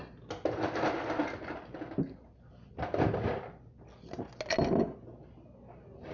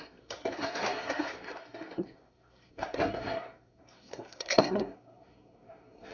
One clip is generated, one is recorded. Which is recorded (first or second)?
first